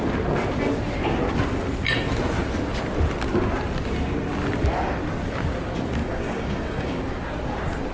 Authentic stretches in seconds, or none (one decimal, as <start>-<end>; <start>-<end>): 0.0-6.0; 7.0-7.9